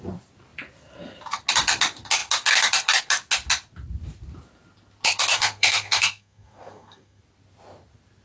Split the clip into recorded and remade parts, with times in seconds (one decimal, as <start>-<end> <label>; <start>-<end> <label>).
0.0-5.3 recorded; 5.3-7.2 remade; 7.2-8.2 recorded